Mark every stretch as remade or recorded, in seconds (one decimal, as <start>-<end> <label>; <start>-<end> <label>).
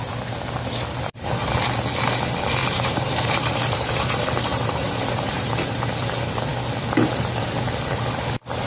0.0-2.6 recorded; 2.6-5.8 remade; 5.8-8.7 recorded